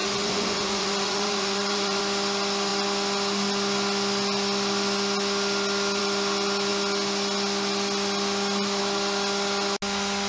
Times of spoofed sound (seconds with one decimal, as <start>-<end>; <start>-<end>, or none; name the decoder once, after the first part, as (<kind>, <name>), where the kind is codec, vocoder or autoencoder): 0.0-2.0 (vocoder, Vocos)